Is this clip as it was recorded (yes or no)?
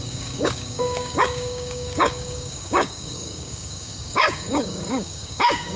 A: no